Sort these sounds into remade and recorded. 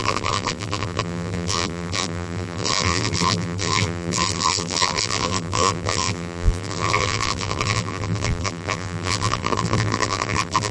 remade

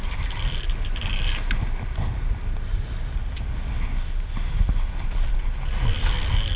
recorded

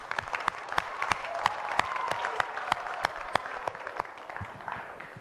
remade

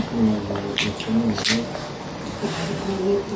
recorded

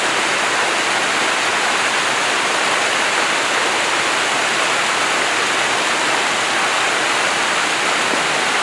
recorded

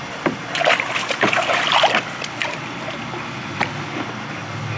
recorded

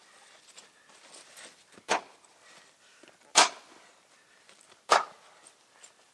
recorded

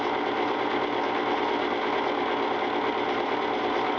recorded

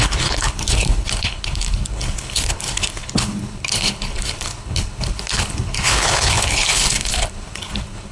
remade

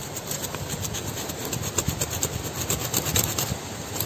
recorded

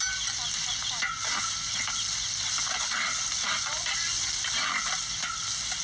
recorded